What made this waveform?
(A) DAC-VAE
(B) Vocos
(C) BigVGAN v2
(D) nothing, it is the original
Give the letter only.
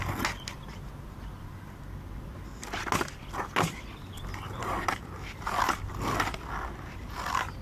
D